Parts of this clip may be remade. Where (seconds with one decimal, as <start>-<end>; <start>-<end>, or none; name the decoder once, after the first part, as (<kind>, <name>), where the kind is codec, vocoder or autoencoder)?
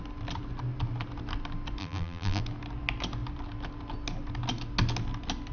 1.8-2.4 (vocoder, BigVGAN v2)